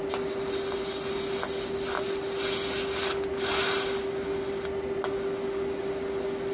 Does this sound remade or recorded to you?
recorded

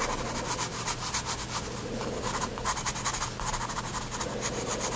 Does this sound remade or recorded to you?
recorded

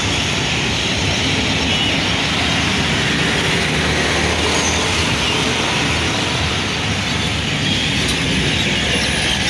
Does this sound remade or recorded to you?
recorded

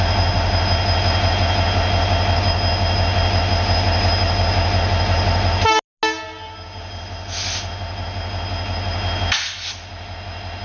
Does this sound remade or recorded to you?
recorded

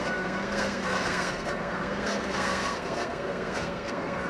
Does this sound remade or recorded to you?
remade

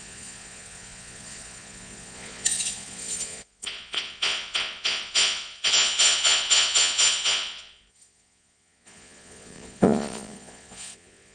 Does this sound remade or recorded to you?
remade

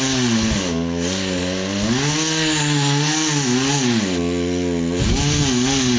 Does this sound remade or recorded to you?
recorded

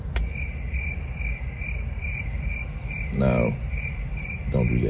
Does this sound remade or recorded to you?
remade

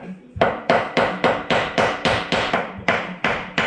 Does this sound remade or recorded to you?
remade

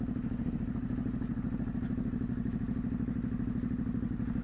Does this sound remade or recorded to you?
recorded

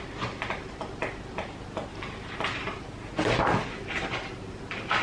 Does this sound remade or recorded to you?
recorded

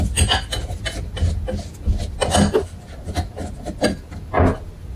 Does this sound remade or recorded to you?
recorded